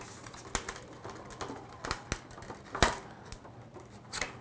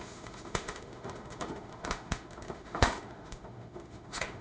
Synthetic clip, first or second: second